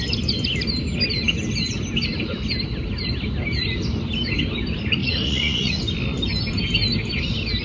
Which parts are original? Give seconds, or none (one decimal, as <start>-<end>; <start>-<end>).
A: 0.0-5.0; 5.8-7.6